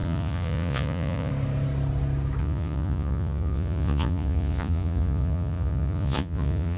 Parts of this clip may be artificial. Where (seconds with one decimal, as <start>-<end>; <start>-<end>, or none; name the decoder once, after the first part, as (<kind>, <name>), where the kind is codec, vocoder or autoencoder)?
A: 0.0-1.3 (vocoder, Vocos); 2.4-6.8